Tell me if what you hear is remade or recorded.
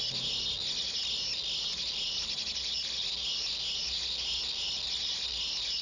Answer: recorded